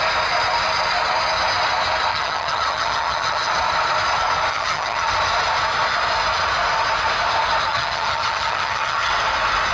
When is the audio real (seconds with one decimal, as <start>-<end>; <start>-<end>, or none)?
0.0-2.1; 3.5-4.5; 5.1-7.7; 9.1-9.7

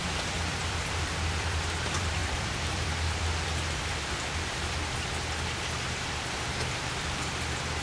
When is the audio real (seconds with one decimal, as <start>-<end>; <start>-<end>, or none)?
none

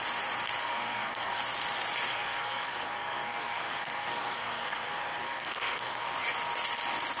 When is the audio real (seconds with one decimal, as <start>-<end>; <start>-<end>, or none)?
0.0-0.6; 1.4-2.1; 6.1-7.2

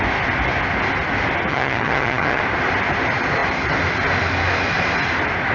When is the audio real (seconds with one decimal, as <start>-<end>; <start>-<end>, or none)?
0.0-1.5; 2.4-5.5

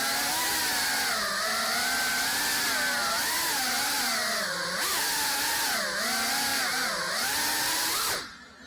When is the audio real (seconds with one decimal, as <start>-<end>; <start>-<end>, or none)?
0.0-6.5; 8.2-8.7